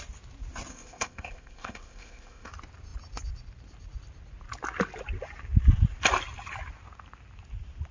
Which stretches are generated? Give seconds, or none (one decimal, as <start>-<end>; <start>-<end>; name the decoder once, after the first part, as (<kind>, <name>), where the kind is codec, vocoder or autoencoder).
0.7-2.5 (codec, ZipCodec)